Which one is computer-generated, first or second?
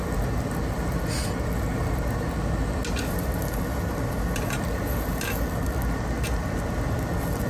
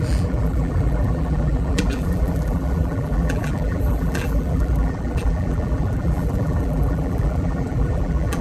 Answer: second